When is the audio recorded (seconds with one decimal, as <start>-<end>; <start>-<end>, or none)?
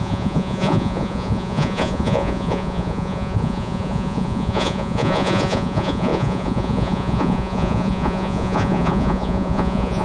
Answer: none